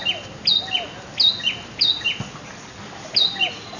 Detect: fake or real real